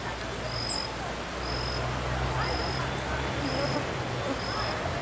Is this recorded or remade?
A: recorded